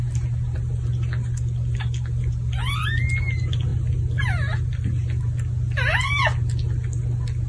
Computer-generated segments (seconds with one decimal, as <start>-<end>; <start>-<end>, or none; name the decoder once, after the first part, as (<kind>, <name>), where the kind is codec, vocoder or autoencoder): none